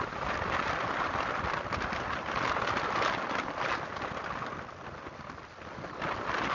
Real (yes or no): yes